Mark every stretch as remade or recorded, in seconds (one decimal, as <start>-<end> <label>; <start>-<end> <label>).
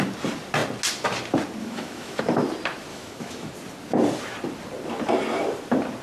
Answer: 0.0-1.6 recorded; 1.6-2.2 remade; 2.2-2.9 recorded; 2.9-3.5 remade; 3.5-6.0 recorded